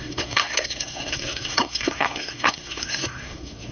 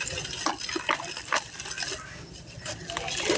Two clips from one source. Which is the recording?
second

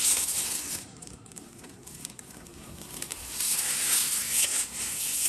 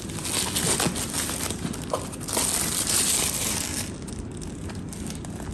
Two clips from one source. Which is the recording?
second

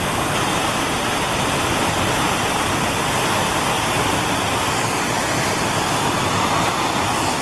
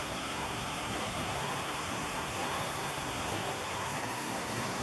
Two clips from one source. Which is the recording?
first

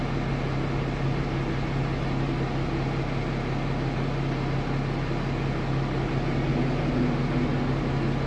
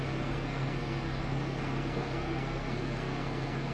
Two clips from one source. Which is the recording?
first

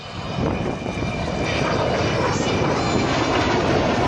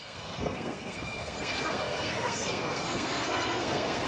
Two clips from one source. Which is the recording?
first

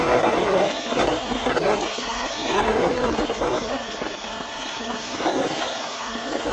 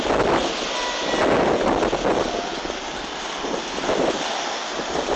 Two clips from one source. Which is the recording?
second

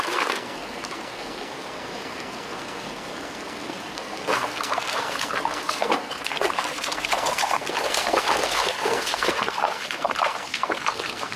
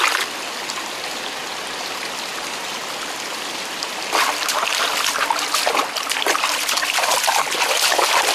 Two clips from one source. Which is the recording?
second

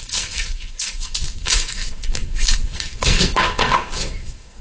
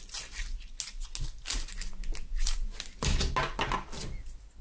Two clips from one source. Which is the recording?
second